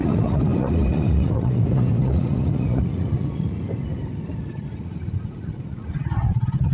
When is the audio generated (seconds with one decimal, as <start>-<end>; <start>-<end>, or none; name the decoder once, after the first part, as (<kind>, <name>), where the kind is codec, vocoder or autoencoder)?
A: 0.0-3.6 (vocoder, Vocos); 4.7-6.7

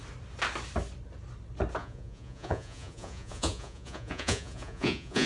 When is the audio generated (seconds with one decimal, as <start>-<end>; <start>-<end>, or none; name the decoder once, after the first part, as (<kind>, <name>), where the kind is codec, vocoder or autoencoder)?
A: 1.8-5.3 (vocoder, Vocos)

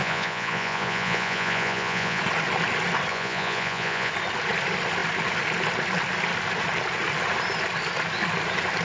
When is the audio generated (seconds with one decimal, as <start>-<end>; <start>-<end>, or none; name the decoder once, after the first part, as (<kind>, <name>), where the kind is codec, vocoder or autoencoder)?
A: 0.0-2.2 (vocoder, Vocos); 3.1-4.1

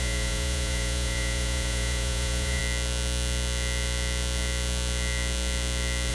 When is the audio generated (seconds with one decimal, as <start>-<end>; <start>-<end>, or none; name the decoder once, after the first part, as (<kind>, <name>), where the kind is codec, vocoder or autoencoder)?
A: 0.0-2.6 (vocoder, Vocos)

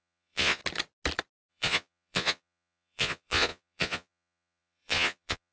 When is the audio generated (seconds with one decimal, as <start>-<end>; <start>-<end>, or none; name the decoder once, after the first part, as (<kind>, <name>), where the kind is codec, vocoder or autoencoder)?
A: 0.0-0.6 (vocoder, Vocos); 1.5-5.5

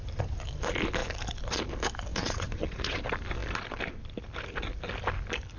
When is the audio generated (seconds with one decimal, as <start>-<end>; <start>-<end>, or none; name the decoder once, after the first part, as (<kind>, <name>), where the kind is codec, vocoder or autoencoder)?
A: 2.1-3.0 (vocoder, Vocos)